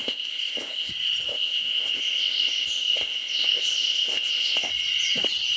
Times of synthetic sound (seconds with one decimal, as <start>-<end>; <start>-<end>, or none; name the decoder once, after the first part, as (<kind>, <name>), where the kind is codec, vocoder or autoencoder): 0.0-0.9 (codec, ZipCodec); 1.3-4.7